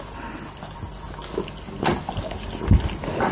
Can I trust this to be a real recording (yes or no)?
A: yes